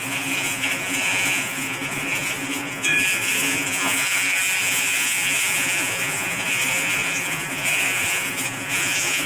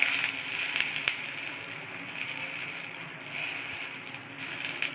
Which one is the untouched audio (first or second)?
second